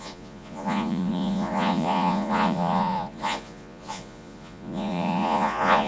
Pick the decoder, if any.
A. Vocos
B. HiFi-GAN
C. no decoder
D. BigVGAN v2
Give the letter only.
A